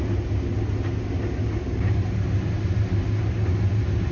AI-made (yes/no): no